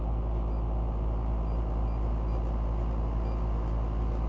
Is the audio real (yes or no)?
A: yes